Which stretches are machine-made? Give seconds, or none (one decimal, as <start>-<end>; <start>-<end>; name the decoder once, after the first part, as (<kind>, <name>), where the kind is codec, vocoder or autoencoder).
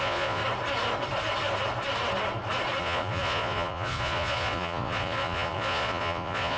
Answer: 0.0-0.4 (vocoder, Vocos); 2.8-6.6